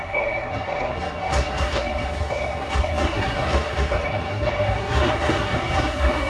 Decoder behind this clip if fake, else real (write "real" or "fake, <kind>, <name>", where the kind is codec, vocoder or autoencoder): fake, codec, SNAC